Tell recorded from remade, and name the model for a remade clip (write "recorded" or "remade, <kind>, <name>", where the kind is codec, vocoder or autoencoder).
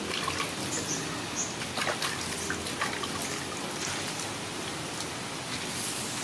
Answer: recorded